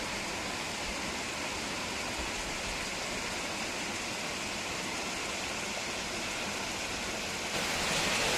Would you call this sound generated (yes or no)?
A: no